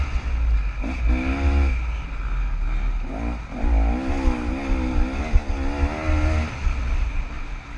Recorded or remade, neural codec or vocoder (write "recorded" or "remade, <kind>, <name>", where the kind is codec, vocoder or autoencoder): recorded